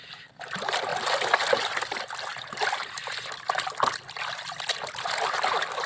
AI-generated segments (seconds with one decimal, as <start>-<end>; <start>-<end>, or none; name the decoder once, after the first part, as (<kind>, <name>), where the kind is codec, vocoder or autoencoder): none